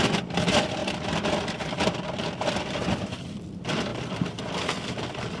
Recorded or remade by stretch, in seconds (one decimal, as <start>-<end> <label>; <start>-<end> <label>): 0.0-5.4 remade